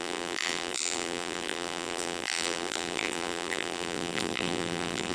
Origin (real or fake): fake